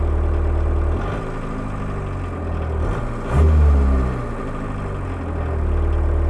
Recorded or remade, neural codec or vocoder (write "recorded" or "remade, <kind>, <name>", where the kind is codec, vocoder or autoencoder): recorded